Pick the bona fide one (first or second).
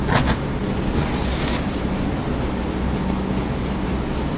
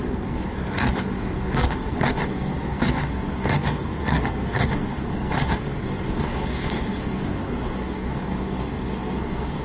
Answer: first